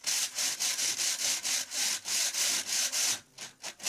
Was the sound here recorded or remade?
recorded